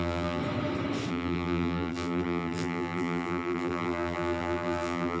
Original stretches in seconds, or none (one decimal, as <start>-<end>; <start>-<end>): 0.4-1.1